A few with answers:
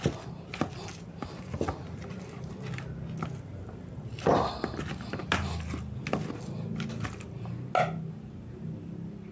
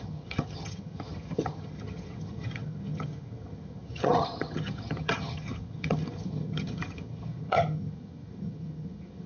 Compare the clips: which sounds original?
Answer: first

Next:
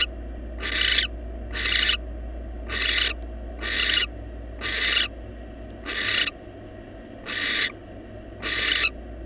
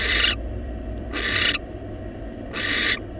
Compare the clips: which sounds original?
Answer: first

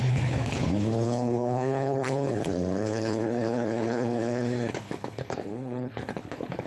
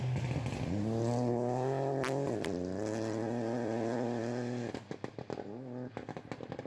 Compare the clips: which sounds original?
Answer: second